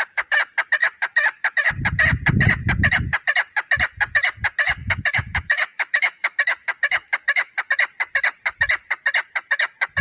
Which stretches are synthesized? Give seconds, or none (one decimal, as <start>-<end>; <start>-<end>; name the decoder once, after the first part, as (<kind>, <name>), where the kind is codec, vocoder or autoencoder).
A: 0.8-1.5 (autoencoder, DAC-VAE); 4.8-7.7